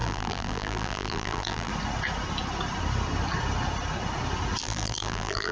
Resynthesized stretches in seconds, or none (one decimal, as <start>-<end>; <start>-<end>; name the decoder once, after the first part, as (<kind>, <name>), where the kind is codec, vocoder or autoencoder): 0.0-1.7 (vocoder, BigVGAN v2); 4.6-5.5